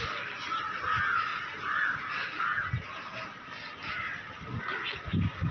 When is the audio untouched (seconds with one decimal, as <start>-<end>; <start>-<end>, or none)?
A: 0.0-1.3; 2.6-5.5

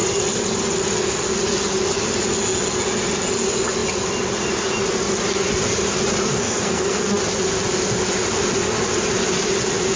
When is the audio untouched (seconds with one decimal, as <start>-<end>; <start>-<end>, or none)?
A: 0.0-6.4; 7.0-10.0